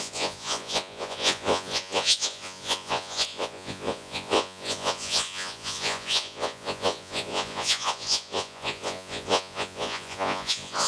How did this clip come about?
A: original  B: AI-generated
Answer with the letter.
B